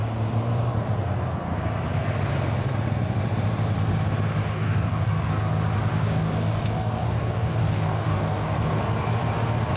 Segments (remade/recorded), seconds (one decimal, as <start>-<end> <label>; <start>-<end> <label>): 0.0-4.4 recorded; 4.4-5.3 remade; 5.3-5.9 recorded; 5.9-8.8 remade; 8.8-9.8 recorded